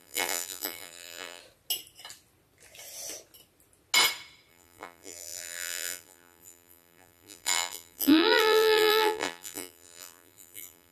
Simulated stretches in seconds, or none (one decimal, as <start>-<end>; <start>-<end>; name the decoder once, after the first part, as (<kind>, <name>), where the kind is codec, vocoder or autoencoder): 0.0-1.4 (vocoder, BigVGAN v2); 4.5-10.9

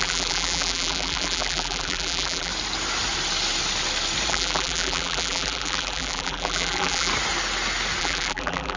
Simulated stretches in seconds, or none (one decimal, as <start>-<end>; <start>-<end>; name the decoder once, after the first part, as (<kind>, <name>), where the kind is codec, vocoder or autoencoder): 0.0-2.5 (vocoder, BigVGAN v2); 4.3-7.1; 8.0-8.8